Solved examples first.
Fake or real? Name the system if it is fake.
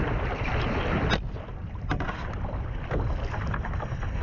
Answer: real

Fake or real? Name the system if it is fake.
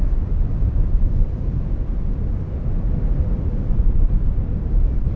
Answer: real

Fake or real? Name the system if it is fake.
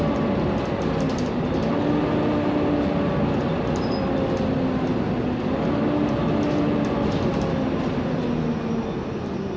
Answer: real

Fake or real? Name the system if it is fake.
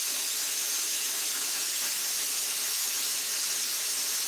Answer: fake, autoencoder, DAC-VAE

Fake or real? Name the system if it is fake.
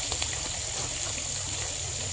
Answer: real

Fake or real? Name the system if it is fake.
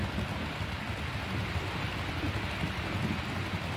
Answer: real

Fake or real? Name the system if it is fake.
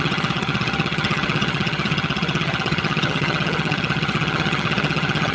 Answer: fake, vocoder, HiFi-GAN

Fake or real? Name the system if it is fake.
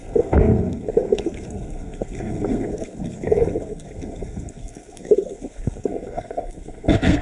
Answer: fake, codec, SNAC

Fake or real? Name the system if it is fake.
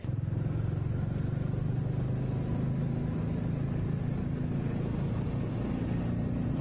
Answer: real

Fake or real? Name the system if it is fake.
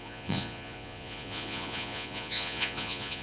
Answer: fake, vocoder, Vocos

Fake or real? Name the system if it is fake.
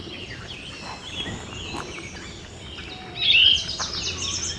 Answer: real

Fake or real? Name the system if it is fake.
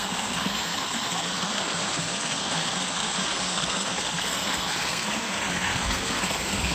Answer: fake, codec, SNAC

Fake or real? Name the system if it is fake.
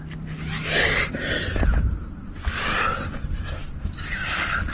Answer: real